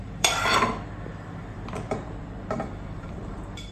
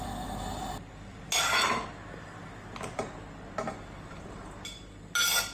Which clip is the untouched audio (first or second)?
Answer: second